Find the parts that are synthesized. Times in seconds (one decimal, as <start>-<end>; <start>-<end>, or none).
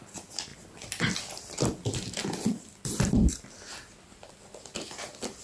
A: 0.5-3.3